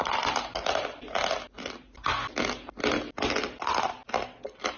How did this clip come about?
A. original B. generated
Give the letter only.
A